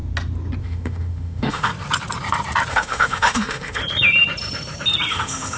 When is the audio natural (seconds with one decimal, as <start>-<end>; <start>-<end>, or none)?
0.0-0.6; 1.7-2.7; 3.8-5.1